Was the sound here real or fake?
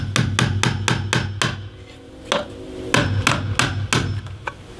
real